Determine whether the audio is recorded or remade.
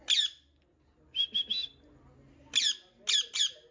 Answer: recorded